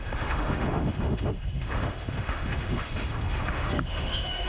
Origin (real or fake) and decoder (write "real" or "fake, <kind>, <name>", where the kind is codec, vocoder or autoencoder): fake, autoencoder, DAC-VAE